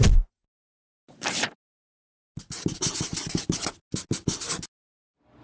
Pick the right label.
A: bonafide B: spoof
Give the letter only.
A